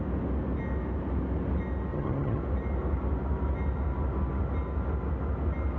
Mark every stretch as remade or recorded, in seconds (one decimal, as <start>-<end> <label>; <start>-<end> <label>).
0.0-1.9 recorded; 1.9-2.4 remade; 2.4-5.8 recorded